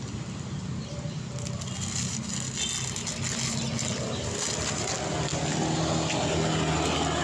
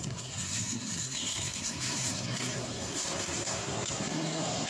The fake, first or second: second